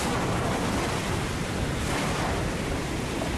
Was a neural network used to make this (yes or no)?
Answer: no